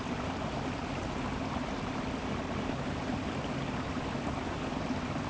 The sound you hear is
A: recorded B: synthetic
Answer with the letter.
A